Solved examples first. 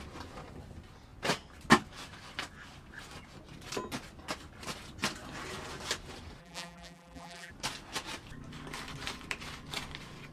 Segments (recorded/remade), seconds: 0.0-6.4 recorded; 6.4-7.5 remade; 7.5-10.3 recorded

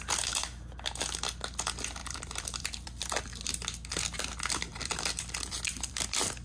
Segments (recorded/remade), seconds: 0.0-2.0 recorded; 2.0-3.3 remade; 3.3-4.7 recorded; 4.7-5.9 remade; 5.9-6.4 recorded